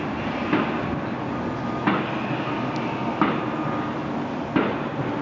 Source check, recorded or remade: recorded